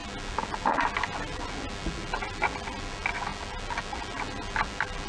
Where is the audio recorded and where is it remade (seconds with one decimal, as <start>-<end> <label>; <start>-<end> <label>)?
0.0-5.1 recorded